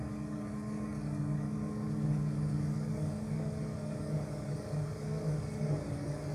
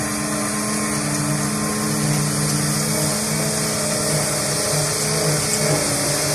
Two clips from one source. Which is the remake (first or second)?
first